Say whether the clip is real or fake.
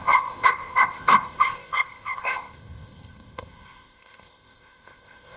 fake